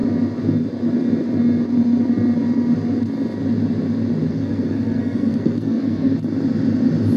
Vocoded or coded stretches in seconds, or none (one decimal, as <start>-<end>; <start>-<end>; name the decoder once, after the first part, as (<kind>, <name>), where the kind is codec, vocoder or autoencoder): 4.3-6.1 (codec, SNAC)